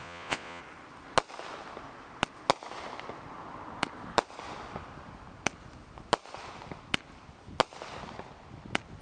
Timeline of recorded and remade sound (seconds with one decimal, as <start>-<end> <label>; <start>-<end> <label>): 0.0-0.6 remade; 0.6-9.0 recorded